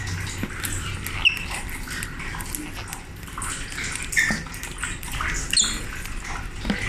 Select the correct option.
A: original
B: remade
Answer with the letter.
A